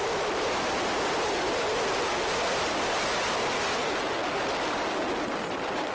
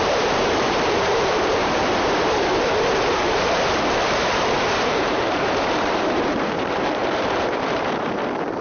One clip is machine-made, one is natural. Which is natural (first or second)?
first